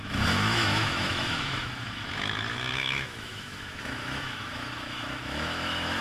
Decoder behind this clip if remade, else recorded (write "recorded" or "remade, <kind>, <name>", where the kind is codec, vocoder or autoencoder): remade, autoencoder, DAC-VAE